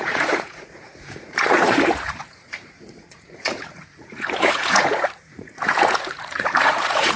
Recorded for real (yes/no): no